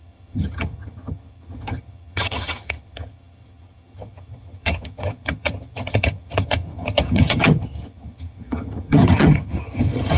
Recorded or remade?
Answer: remade